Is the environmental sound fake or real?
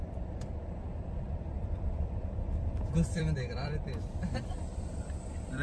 fake